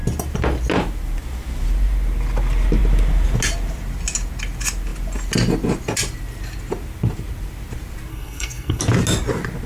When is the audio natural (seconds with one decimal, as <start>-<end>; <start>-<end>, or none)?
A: 0.0-8.1; 8.8-9.7